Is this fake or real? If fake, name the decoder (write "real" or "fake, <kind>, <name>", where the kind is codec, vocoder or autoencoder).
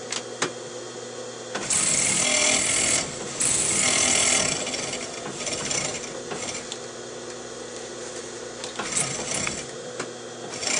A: real